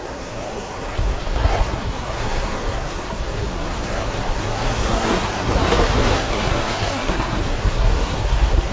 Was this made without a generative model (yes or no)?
no